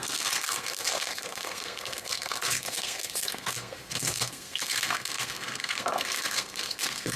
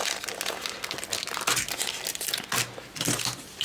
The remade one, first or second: first